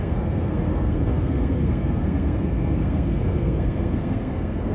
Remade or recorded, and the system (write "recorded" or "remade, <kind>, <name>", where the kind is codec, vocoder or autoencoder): remade, codec, SNAC